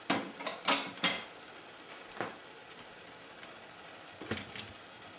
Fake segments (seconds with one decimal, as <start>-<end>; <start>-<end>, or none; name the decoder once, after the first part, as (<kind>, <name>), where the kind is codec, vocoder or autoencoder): none